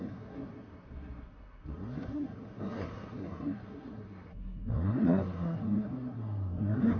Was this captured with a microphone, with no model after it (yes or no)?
no